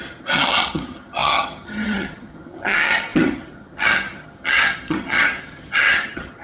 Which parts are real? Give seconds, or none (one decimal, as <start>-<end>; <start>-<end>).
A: none